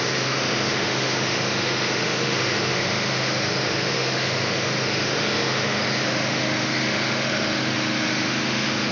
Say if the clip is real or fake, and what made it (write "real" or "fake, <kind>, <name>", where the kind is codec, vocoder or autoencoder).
fake, autoencoder, DAC-VAE